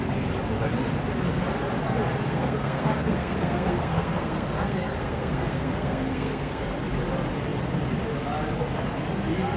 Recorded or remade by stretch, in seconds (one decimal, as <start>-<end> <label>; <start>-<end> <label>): 0.0-2.2 recorded; 2.2-6.6 remade; 6.6-9.6 recorded